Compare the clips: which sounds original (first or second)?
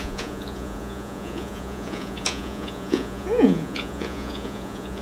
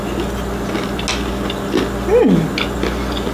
second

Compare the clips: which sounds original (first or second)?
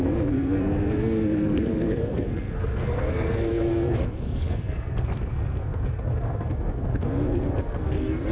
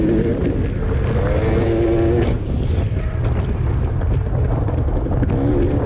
second